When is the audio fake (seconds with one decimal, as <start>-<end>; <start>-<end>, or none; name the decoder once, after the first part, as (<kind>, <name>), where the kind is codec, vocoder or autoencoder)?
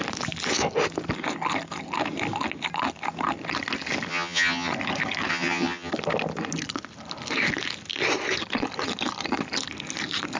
4.1-4.7 (vocoder, HiFi-GAN); 5.3-5.9